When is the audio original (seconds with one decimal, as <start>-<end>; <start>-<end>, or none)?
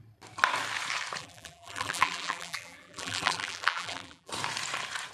0.0-1.2; 4.3-5.1